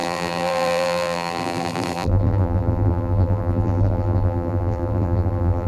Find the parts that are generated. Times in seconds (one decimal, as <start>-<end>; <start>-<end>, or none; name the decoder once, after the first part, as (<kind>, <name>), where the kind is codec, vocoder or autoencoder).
0.0-5.7 (vocoder, BigVGAN v2)